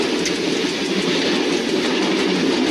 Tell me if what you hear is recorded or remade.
recorded